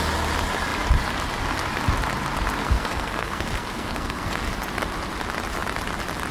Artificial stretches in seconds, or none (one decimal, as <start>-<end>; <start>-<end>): 2.6-4.4